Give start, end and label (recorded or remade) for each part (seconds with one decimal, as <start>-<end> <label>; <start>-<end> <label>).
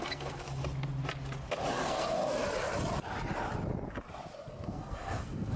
0.0-0.6 remade; 0.6-1.7 recorded; 1.7-2.2 remade; 2.2-4.5 recorded; 4.5-5.6 remade